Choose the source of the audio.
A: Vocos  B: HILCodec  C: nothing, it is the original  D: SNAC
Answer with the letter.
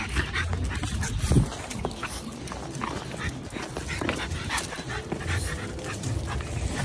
C